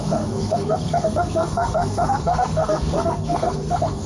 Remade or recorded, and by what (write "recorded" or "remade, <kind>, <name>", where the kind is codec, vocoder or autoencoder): remade, codec, SNAC